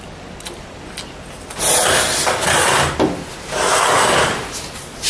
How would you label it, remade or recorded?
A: recorded